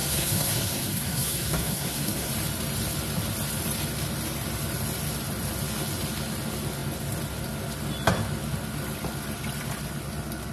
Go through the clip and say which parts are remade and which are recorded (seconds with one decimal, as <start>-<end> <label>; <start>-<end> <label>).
0.0-2.3 remade; 2.3-10.5 recorded